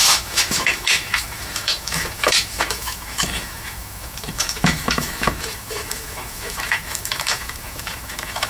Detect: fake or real fake